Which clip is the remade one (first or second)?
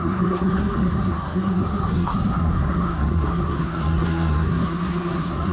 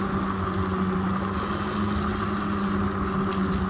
first